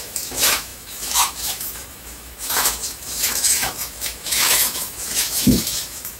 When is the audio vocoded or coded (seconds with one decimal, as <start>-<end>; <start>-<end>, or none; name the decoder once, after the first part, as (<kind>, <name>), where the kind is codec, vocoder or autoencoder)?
0.0-6.2 (autoencoder, DAC-VAE)